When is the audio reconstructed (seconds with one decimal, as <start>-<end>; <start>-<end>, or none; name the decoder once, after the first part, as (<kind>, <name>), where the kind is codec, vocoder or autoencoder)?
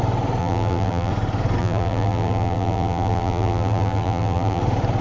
0.4-1.1 (vocoder, BigVGAN v2); 1.6-4.6